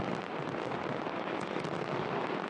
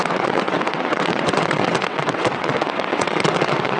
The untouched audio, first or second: first